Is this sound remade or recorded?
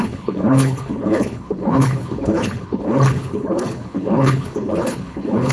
remade